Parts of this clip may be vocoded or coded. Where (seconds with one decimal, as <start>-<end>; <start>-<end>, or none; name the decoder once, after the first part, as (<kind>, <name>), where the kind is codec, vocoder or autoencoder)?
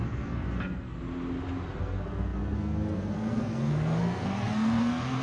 0.0-1.0 (codec, SNAC); 1.8-5.2